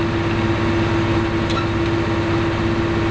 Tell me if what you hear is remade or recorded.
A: recorded